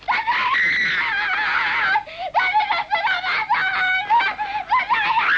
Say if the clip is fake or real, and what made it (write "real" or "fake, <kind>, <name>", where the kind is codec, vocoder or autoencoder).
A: real